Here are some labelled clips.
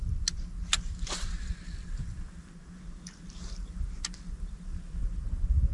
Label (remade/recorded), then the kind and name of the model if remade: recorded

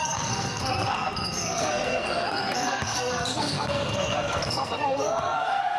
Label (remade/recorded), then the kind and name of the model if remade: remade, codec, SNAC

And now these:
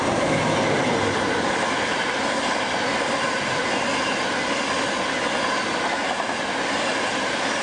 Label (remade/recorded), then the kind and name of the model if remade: recorded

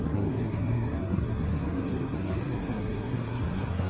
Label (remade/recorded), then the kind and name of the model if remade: remade, codec, SNAC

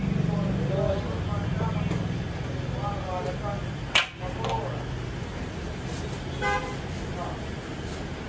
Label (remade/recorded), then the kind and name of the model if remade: recorded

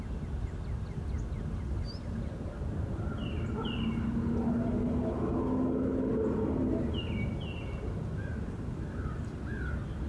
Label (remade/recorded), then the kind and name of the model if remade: recorded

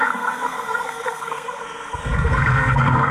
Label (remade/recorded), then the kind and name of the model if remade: remade, codec, SNAC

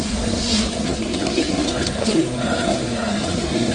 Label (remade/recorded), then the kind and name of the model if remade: remade, codec, SNAC